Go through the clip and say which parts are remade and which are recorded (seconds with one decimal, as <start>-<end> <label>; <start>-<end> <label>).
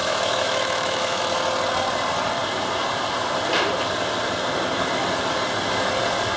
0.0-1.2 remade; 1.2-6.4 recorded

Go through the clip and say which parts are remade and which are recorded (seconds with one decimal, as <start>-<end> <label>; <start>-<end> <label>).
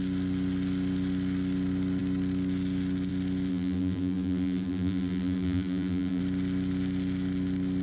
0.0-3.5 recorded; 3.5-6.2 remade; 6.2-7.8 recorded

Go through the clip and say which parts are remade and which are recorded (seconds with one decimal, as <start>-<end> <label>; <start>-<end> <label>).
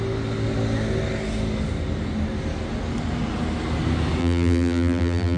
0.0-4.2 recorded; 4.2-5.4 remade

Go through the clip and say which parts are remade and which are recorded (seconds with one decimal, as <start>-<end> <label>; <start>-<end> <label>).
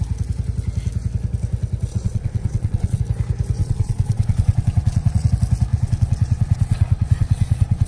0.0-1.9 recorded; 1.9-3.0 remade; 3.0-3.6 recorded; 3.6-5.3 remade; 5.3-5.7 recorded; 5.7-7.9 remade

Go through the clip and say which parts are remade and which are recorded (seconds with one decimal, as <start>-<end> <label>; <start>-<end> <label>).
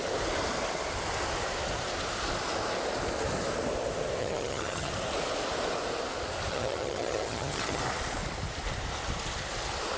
0.0-4.2 recorded; 4.2-4.9 remade; 4.9-6.5 recorded; 6.5-7.8 remade; 7.8-10.0 recorded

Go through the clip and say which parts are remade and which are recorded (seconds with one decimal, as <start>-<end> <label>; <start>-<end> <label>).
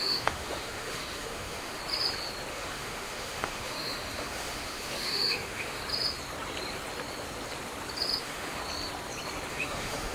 0.0-1.8 remade; 1.8-2.5 recorded; 2.5-5.8 remade; 5.8-8.2 recorded; 8.2-8.6 remade; 8.6-9.5 recorded; 9.5-10.1 remade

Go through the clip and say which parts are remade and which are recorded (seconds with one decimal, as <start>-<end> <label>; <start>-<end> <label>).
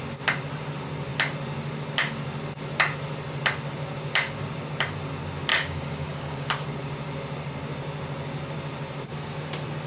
0.0-5.5 recorded; 5.5-6.5 remade; 6.5-9.9 recorded